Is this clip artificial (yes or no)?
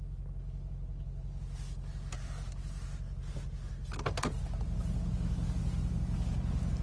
no